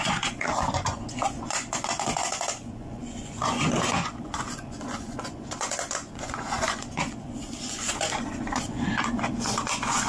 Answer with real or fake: fake